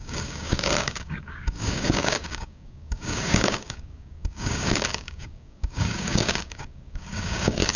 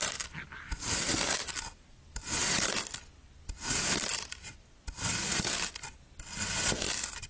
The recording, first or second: second